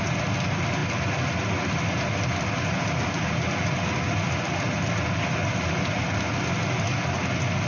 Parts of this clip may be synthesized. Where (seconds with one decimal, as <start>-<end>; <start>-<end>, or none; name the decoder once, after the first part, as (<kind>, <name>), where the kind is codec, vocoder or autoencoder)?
none

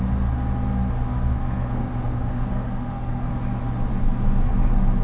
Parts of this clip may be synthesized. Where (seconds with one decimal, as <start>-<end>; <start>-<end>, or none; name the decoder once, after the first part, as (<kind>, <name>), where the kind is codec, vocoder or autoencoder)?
1.1-3.3 (codec, SNAC); 3.9-4.5

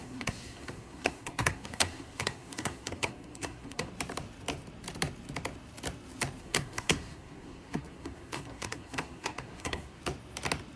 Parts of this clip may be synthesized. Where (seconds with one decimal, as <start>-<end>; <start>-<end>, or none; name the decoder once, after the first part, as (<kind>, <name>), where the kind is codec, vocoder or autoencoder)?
0.0-3.9 (codec, SNAC); 6.4-10.0

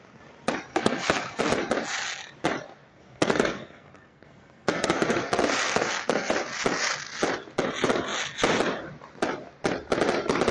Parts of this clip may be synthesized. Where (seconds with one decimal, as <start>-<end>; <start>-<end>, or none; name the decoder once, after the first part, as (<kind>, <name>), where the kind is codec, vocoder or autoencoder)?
0.7-1.4 (codec, SNAC); 2.9-6.3

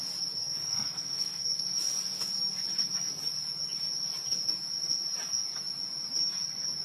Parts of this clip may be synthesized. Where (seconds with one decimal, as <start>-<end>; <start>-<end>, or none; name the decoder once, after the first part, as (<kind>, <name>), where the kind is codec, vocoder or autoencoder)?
0.4-1.6 (codec, SNAC)

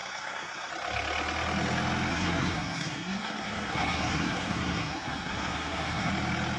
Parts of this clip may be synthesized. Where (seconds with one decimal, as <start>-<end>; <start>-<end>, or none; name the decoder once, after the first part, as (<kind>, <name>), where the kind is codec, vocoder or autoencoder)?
0.0-0.7 (codec, SNAC); 2.1-6.1

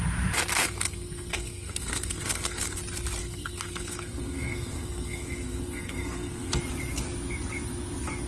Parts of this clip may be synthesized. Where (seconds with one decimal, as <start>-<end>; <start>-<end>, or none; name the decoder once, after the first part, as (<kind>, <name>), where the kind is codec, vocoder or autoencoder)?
0.6-2.8 (codec, SNAC); 3.2-6.6

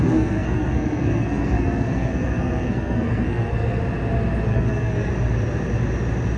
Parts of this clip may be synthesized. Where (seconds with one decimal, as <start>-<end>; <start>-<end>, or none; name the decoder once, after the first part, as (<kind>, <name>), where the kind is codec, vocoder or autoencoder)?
0.0-3.8 (codec, SNAC); 4.5-5.1